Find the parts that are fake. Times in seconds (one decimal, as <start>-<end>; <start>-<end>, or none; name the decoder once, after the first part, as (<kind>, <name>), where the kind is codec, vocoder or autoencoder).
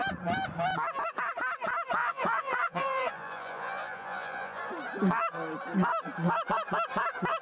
2.0-4.7 (vocoder, Vocos)